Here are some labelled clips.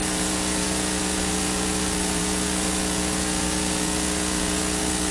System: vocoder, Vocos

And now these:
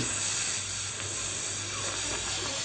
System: none